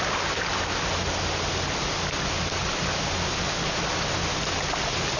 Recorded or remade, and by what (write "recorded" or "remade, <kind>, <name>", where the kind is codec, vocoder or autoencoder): recorded